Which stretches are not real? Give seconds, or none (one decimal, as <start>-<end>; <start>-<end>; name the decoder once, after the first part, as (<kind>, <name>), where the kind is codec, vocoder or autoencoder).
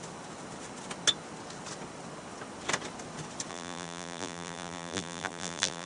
3.5-5.9 (vocoder, BigVGAN v2)